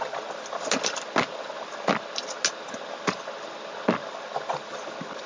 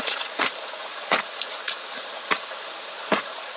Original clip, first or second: first